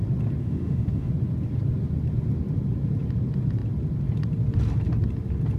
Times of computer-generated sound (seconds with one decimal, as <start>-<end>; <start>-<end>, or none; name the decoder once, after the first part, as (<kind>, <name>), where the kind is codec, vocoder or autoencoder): 0.4-1.1 (autoencoder, DAC-VAE)